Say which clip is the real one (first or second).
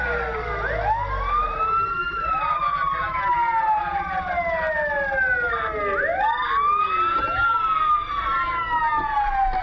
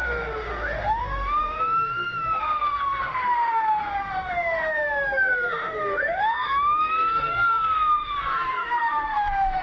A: first